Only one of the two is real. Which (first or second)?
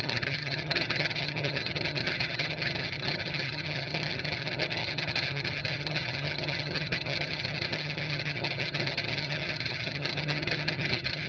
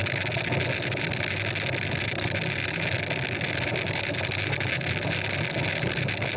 second